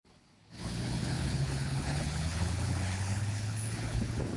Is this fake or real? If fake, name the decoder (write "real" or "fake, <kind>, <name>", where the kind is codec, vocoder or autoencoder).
fake, codec, HILCodec